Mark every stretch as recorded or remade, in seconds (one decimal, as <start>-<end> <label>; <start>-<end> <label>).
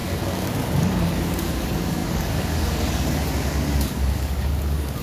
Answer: 0.0-5.0 remade